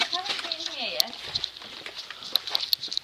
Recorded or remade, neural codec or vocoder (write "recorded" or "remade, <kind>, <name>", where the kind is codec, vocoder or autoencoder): recorded